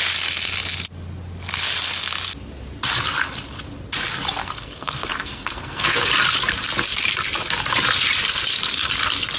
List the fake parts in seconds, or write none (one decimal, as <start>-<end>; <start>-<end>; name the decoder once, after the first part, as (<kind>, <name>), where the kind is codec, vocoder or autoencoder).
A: 4.4-6.1 (codec, SNAC)